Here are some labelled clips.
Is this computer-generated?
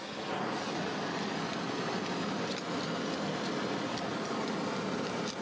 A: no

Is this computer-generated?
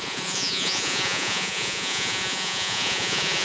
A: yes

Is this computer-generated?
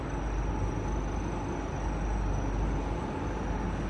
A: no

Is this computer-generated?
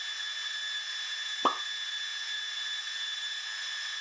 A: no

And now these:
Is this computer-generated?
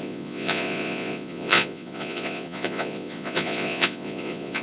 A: yes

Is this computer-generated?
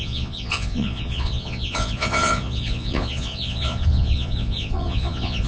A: yes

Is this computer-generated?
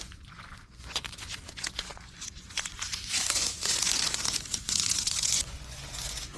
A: yes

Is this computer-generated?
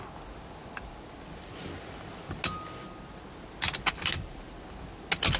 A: no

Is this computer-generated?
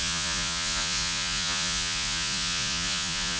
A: yes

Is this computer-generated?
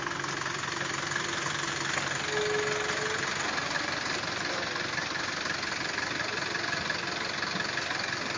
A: no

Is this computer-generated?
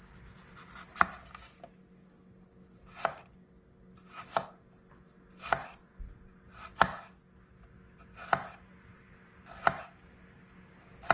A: no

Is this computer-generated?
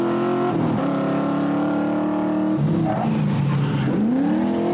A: no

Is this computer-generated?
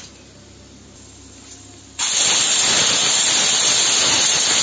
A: no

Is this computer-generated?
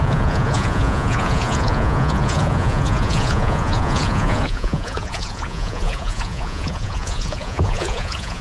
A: yes